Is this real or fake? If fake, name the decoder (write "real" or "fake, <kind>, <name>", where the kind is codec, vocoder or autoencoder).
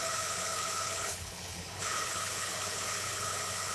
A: fake, codec, HILCodec